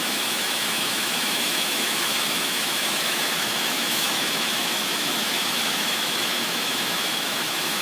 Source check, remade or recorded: remade